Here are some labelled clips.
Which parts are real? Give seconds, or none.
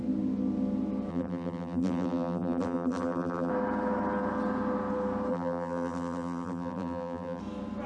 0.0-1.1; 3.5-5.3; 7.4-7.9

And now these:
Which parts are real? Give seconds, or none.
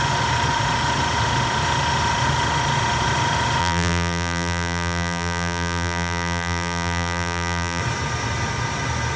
0.0-3.6; 7.8-9.2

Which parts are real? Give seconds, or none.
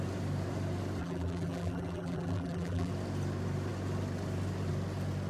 0.0-1.0; 2.9-5.3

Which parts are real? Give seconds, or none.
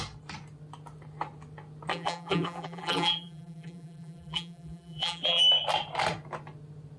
0.0-1.9; 5.4-7.0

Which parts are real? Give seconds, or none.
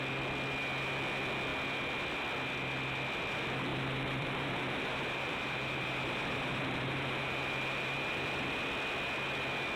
0.0-3.7; 8.5-9.8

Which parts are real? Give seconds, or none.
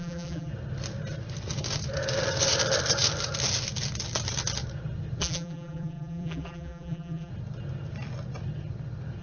0.5-5.2; 7.3-9.2